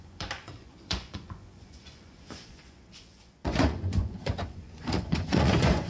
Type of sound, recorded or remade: remade